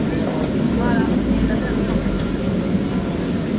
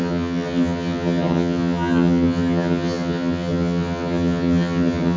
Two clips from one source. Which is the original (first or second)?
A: first